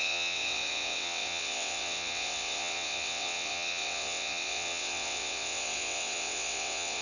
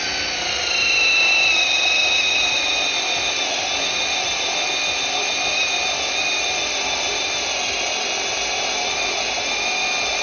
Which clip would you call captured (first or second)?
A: second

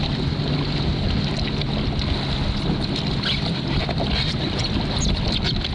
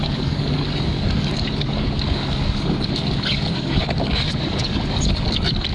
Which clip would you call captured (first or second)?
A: first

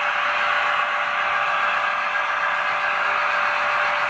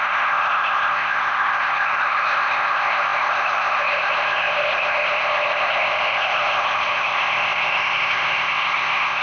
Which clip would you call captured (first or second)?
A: first